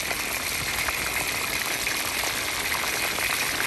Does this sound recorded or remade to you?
recorded